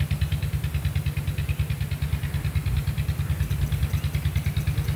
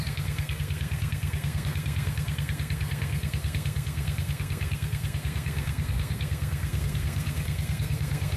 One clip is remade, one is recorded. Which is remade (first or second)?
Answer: second